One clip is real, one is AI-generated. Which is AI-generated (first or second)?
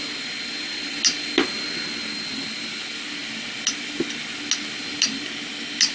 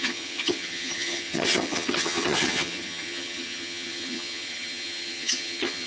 second